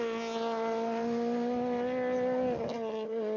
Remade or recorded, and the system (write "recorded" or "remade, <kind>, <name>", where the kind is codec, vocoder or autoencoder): recorded